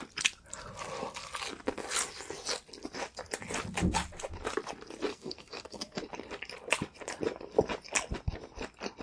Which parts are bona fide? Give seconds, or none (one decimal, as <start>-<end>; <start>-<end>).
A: 0.0-5.1; 6.0-9.0